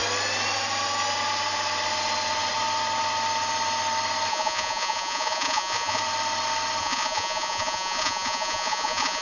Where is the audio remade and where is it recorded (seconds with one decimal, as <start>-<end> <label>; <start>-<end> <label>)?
0.0-4.3 recorded; 4.3-6.0 remade; 6.0-6.8 recorded; 6.8-9.2 remade